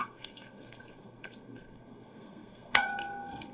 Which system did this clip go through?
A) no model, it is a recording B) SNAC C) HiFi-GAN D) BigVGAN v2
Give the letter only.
B